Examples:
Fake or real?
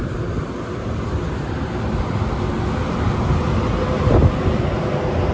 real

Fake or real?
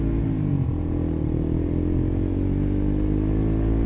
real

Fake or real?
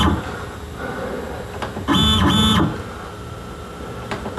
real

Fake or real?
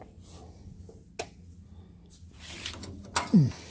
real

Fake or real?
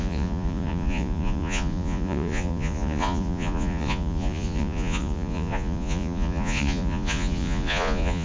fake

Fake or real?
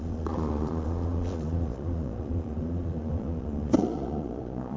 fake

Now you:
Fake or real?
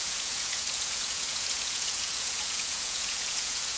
fake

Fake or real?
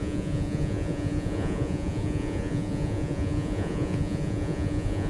fake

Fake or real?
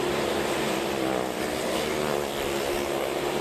real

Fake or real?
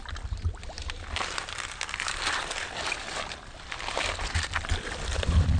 real